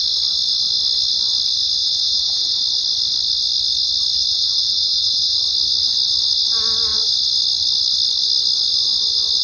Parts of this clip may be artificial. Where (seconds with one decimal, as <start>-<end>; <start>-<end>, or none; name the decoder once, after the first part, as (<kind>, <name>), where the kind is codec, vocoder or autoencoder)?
1.8-2.6 (vocoder, Vocos); 4.3-5.4